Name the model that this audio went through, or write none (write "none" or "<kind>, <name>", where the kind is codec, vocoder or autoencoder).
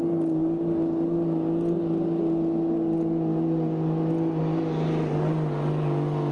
none